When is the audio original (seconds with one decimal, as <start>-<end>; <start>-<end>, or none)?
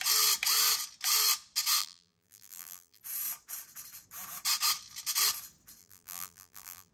0.0-1.8; 3.0-5.8